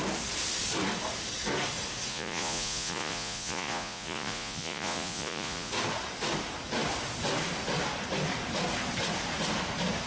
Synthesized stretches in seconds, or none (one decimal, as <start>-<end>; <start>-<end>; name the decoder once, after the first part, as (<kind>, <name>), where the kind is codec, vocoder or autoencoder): 2.1-5.7 (vocoder, Vocos)